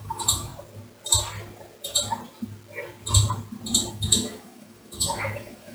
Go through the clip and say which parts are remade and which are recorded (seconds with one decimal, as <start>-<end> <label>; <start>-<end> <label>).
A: 0.0-0.5 remade; 0.5-3.9 recorded; 3.9-5.7 remade

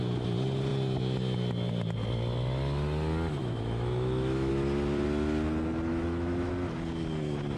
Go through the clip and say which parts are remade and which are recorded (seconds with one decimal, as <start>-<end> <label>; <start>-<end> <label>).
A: 0.0-3.4 recorded; 3.4-4.5 remade; 4.5-5.9 recorded; 5.9-6.5 remade; 6.5-7.6 recorded